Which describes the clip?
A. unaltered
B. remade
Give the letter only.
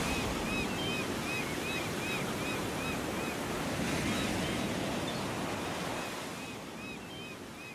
A